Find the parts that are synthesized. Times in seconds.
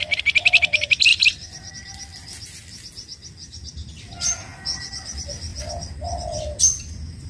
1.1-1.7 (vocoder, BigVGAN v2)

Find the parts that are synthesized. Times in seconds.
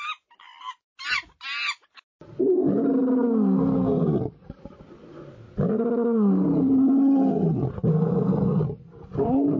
7.9-8.6 (codec, SNAC)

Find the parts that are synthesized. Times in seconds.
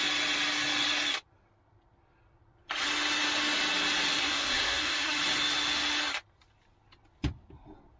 4.2-5.1 (codec, SNAC)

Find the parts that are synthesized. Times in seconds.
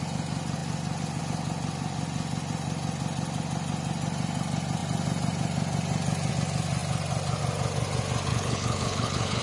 8.3-9.4 (codec, HILCodec)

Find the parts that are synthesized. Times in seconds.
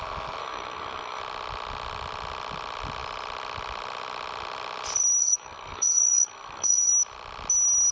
0.4-1.2 (codec, SNAC); 5.2-6.9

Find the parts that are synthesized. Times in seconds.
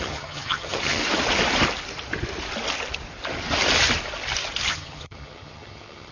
0.0-1.0 (vocoder, HiFi-GAN); 4.7-6.1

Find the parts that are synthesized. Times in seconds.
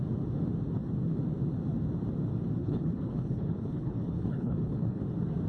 2.6-5.0 (codec, HILCodec)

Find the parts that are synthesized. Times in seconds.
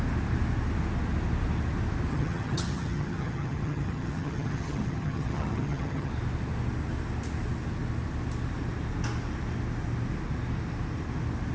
2.1-6.1 (vocoder, HiFi-GAN)